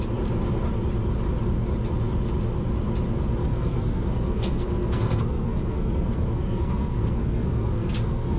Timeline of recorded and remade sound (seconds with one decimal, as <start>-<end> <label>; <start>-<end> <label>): 0.0-3.4 recorded; 3.4-8.4 remade